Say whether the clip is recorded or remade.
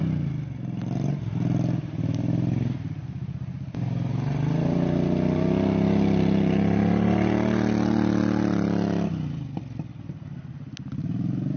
recorded